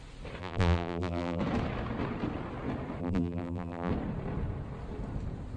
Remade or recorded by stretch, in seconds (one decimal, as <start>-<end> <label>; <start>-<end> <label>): 0.0-0.4 recorded; 0.4-1.4 remade; 1.4-3.0 recorded; 3.0-3.9 remade; 3.9-5.6 recorded